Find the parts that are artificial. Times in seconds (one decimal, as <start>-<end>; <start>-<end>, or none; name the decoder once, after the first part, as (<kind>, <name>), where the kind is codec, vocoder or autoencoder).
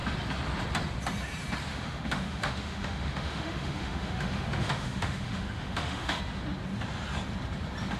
1.7-6.2 (autoencoder, DAC-VAE)